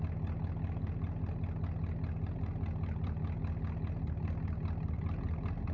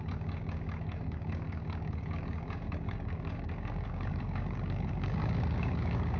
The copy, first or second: second